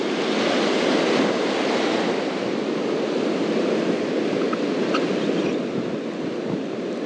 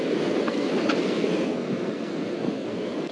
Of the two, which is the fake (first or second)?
second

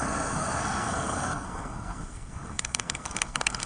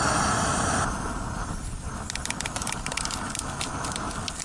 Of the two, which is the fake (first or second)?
first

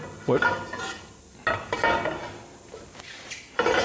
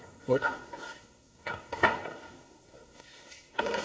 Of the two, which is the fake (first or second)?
second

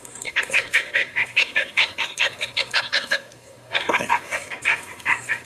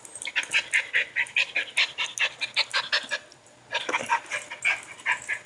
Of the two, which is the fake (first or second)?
first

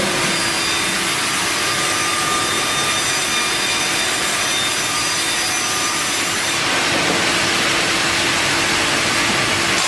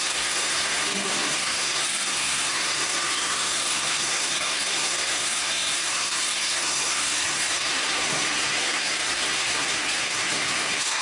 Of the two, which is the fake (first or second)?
second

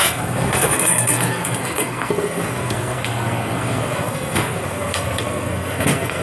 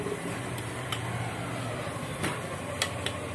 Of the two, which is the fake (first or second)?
first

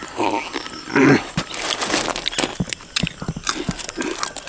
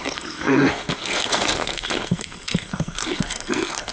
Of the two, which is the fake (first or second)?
second